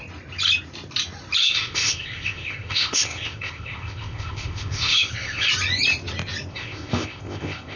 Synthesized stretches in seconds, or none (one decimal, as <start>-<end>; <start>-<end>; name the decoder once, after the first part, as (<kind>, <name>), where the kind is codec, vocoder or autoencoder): 1.4-5.5 (codec, ZipCodec); 6.5-7.8